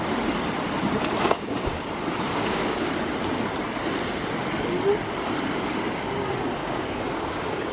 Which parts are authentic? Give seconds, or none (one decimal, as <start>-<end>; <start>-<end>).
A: 0.0-1.2; 1.8-2.3; 2.9-6.6